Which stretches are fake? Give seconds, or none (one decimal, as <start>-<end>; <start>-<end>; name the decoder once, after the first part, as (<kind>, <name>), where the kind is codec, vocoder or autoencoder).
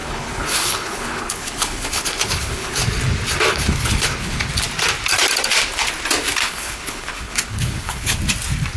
0.0-2.8 (codec, HILCodec); 3.5-4.5; 6.4-8.2